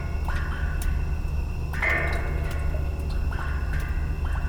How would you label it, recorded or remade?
recorded